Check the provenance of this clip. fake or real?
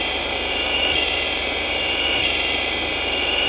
fake